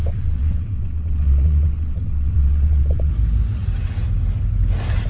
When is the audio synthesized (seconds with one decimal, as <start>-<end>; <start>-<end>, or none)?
0.0-3.1